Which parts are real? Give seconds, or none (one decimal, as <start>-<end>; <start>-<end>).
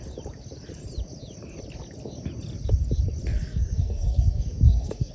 0.0-3.3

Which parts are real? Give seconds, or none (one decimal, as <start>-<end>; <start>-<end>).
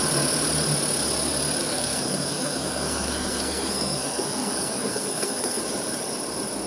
0.0-1.6; 5.6-6.7